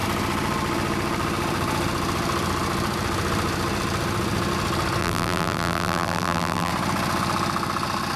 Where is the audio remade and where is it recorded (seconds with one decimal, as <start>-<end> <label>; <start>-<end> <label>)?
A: 0.0-5.0 recorded; 5.0-6.7 remade; 6.7-8.2 recorded